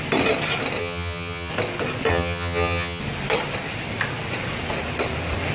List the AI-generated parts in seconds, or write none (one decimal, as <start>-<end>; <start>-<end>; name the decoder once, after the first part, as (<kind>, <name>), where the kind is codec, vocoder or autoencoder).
0.8-1.5 (vocoder, HiFi-GAN); 2.1-3.0